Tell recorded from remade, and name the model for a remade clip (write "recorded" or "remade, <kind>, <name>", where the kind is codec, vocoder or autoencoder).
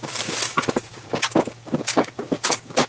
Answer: remade, codec, DAC